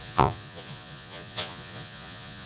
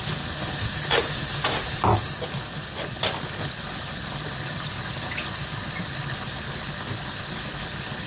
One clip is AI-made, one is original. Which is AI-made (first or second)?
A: first